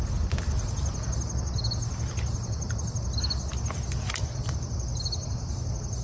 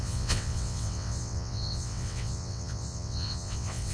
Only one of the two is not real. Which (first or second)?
second